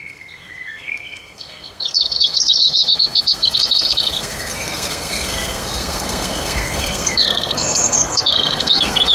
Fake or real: fake